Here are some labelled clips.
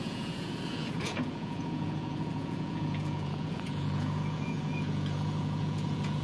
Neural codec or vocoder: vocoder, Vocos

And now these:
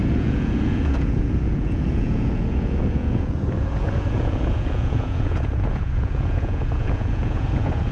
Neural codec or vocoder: vocoder, Vocos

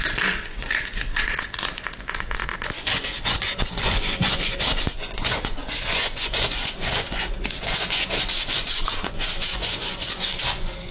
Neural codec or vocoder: vocoder, Vocos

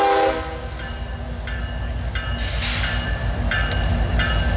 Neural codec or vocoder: none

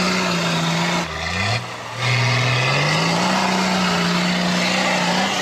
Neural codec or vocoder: none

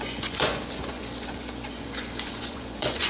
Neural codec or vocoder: vocoder, Vocos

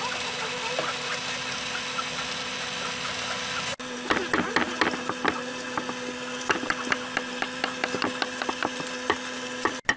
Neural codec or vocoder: none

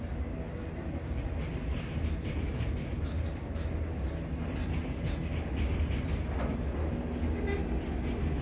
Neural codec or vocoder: none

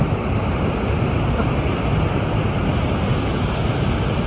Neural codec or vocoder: none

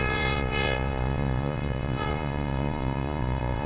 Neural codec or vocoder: vocoder, Vocos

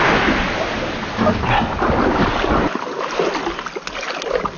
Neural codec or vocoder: none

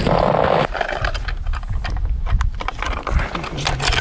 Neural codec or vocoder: none